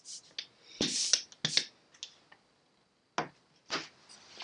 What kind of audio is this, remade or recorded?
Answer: recorded